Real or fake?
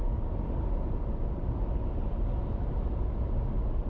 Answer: real